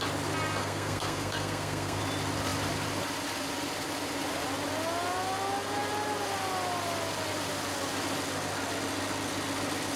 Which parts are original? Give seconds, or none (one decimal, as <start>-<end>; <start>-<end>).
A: 0.0-0.6; 2.0-10.0

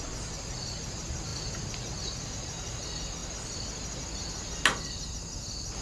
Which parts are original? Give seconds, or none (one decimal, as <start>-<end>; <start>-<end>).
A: 0.0-5.8